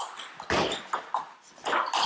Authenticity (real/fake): real